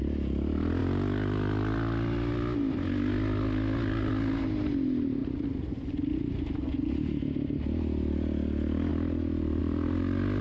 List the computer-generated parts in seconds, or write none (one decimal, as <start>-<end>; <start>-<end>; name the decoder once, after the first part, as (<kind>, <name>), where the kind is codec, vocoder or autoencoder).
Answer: none